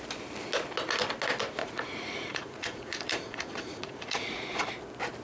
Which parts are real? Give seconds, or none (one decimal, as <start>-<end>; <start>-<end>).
0.0-1.6; 4.7-5.2